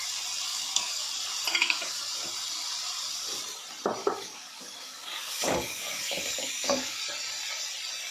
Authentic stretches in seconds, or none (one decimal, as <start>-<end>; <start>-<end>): 0.0-0.5; 1.1-1.5; 2.1-4.0; 7.0-8.1